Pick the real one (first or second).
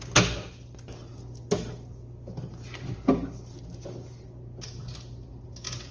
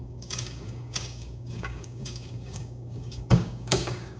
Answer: first